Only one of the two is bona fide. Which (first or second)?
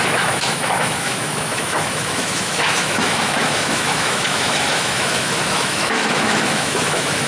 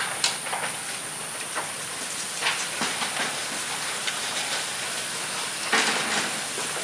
second